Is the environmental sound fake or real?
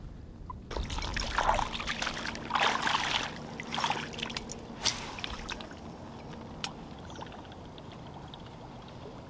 real